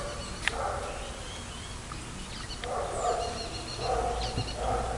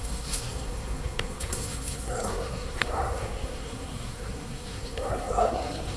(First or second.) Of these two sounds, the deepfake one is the second